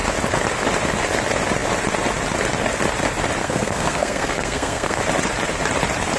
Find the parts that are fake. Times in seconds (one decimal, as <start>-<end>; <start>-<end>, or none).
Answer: 3.4-5.0